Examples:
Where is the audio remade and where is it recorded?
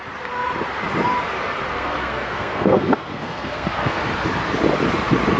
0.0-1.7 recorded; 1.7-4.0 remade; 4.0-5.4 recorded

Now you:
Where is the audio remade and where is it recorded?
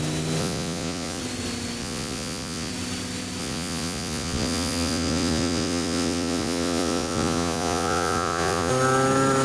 0.0-0.4 recorded; 0.4-1.2 remade; 1.2-1.8 recorded; 1.8-2.7 remade; 2.7-3.4 recorded; 3.4-8.7 remade; 8.7-9.4 recorded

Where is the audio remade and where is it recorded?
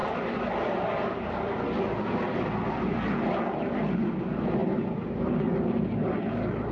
0.0-6.7 recorded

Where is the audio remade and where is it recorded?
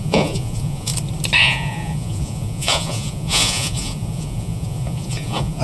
0.0-0.9 remade; 0.9-1.4 recorded; 1.4-5.6 remade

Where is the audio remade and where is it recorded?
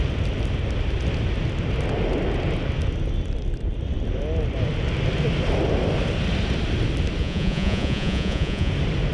0.0-7.2 recorded; 7.2-8.7 remade; 8.7-9.1 recorded